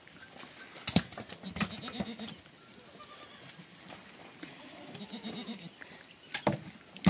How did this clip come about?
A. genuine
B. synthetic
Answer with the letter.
A